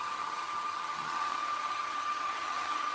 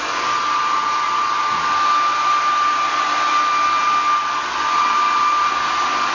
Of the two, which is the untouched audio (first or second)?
second